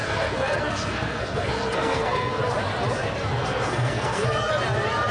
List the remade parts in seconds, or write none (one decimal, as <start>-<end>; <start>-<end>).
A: 0.0-2.4; 3.3-4.5